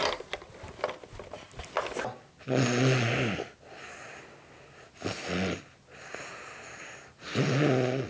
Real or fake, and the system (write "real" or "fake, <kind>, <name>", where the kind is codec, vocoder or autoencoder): real